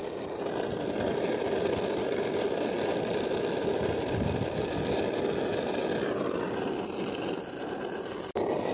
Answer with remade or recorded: recorded